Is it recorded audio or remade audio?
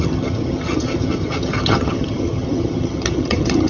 remade